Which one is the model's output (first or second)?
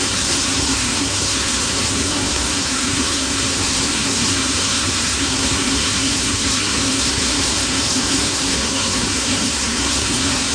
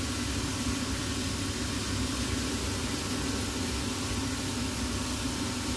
first